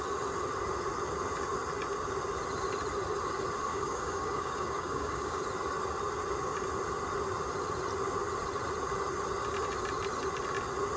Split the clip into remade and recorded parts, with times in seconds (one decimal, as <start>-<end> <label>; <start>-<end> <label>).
0.0-3.7 recorded; 3.7-5.4 remade; 5.4-11.0 recorded